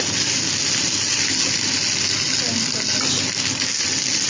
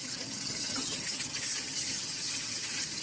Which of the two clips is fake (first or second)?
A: second